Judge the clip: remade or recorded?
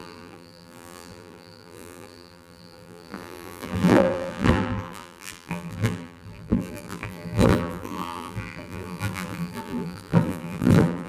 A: remade